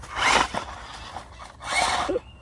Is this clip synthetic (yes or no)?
no